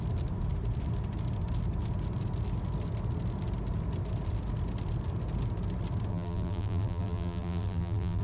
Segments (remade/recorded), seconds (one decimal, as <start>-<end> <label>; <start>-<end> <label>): 0.0-6.1 recorded; 6.1-8.2 remade